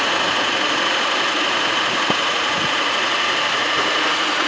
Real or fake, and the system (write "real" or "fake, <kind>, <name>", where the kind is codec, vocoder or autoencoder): fake, vocoder, Vocos